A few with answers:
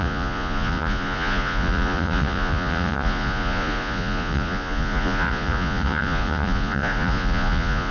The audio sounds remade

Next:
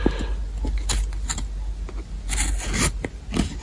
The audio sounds recorded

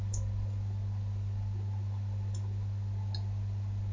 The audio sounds recorded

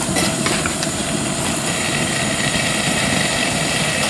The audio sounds recorded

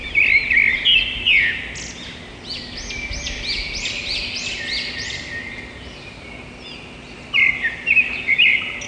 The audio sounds recorded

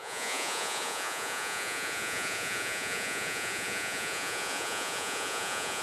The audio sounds remade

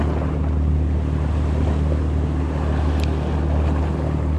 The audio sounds recorded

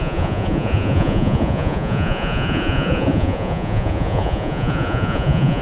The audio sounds remade